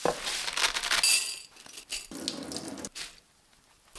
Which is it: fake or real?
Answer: real